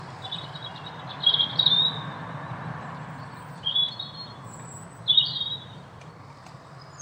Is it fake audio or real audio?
fake